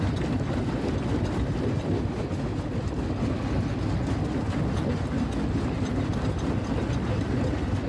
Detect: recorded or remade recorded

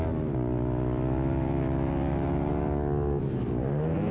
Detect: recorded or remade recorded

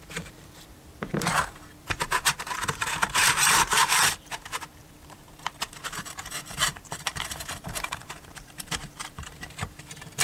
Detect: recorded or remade remade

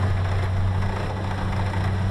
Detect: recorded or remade recorded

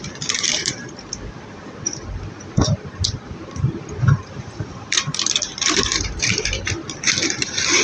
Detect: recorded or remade remade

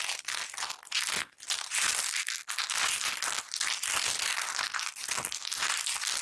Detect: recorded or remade recorded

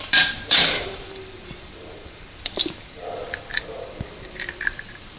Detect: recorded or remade remade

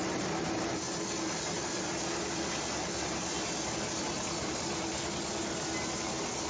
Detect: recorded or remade recorded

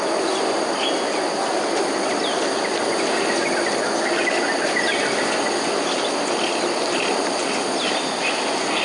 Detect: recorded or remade recorded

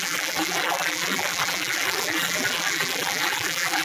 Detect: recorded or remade remade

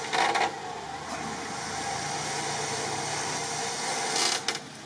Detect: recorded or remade recorded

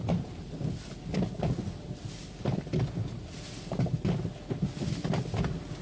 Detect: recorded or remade recorded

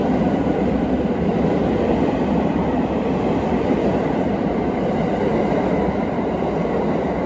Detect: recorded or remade remade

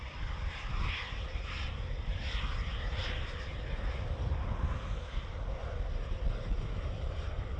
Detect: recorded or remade recorded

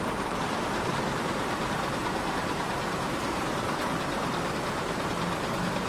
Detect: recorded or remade remade